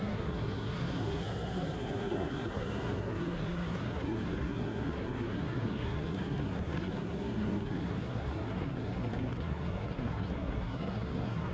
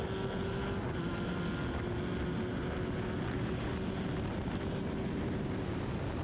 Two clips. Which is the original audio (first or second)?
second